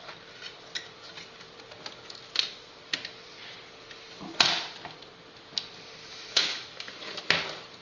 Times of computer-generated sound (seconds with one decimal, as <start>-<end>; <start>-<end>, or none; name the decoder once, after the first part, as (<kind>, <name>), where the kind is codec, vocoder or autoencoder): 6.0-6.9 (autoencoder, DAC-VAE)